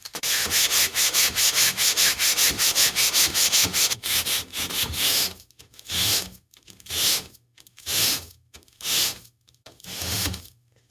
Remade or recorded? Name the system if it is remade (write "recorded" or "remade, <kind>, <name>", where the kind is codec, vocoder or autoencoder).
remade, autoencoder, DAC-VAE